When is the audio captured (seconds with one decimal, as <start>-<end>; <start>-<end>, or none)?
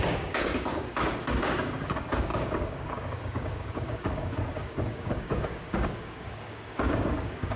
none